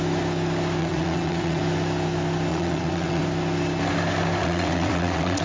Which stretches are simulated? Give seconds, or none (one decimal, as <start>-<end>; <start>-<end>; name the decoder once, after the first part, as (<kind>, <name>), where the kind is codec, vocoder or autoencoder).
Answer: 0.8-1.6 (vocoder, WaveNeXt); 2.5-3.2; 4.4-5.4